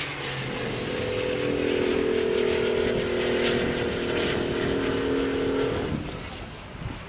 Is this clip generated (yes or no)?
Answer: no